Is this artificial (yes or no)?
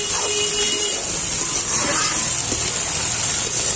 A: no